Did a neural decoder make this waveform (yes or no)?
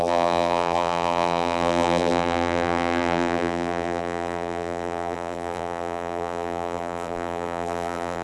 yes